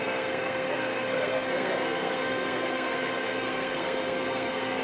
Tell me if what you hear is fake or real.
fake